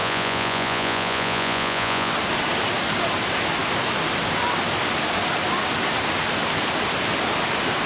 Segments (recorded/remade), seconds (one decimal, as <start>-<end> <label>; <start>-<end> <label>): 0.0-2.1 remade; 2.1-7.9 recorded

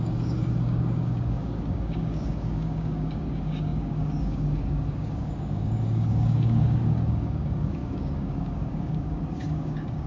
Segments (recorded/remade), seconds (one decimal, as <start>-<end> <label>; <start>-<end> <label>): 0.0-10.1 remade

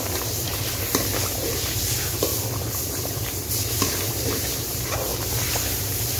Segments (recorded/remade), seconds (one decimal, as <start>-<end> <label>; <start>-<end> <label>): 0.0-0.5 remade; 0.5-1.3 recorded; 1.3-2.3 remade; 2.3-3.1 recorded; 3.1-5.1 remade; 5.1-5.7 recorded; 5.7-6.2 remade

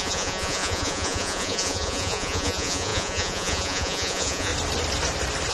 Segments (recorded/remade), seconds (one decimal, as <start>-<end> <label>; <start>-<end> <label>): 0.0-4.5 remade; 4.5-5.5 recorded

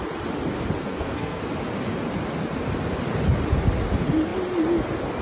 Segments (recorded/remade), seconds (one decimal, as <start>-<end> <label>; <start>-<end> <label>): 0.0-0.8 recorded; 0.8-1.4 remade; 1.4-5.2 recorded

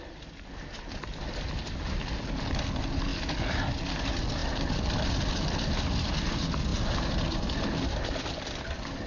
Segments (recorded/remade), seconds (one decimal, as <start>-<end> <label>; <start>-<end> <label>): 0.0-9.1 recorded